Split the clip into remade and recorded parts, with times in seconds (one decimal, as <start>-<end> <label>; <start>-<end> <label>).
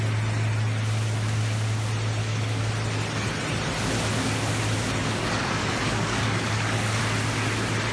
0.0-2.2 recorded; 2.2-2.7 remade; 2.7-5.0 recorded; 5.0-7.0 remade; 7.0-7.9 recorded